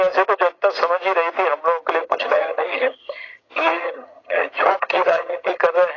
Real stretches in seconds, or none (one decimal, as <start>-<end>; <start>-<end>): 0.0-2.0; 5.6-6.0